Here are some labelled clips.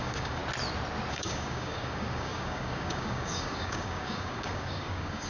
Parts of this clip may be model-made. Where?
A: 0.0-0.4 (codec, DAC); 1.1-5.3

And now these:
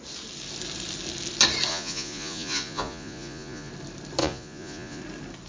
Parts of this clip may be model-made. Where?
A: 1.7-3.7 (vocoder, Vocos); 4.2-5.0

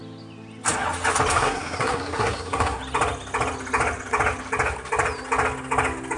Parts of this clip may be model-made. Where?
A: 1.3-2.8 (codec, SNAC)